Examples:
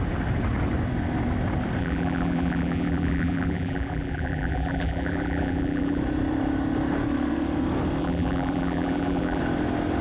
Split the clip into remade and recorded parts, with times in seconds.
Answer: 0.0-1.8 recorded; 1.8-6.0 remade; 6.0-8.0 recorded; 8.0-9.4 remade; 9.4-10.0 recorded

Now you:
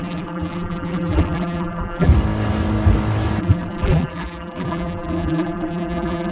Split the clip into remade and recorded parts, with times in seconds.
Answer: 0.0-2.1 remade; 2.1-3.4 recorded; 3.4-6.3 remade